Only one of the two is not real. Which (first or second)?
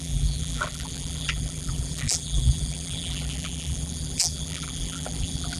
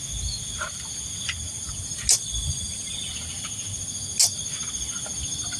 first